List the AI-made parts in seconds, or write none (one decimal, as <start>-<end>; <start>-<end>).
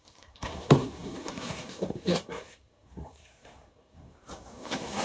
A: 0.0-5.0